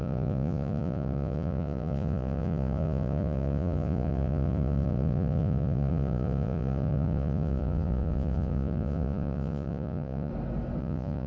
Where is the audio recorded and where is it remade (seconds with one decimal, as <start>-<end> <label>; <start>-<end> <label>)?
0.0-10.3 remade; 10.3-10.8 recorded; 10.8-11.3 remade